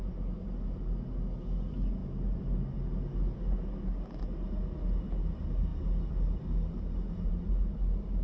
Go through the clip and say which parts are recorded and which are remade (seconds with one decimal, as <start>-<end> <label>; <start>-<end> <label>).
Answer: 0.0-8.2 recorded